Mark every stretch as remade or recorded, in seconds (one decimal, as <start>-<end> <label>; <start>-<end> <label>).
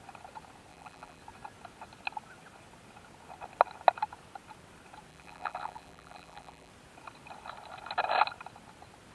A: 0.0-0.7 recorded; 0.7-1.2 remade; 1.2-5.1 recorded; 5.1-6.7 remade; 6.7-9.1 recorded